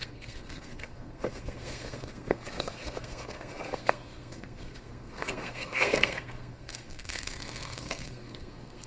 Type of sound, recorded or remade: remade